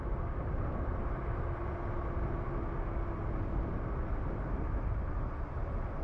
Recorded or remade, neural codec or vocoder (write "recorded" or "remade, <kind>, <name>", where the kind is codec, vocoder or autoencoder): recorded